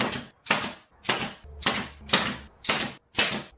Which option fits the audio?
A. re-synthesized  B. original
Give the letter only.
B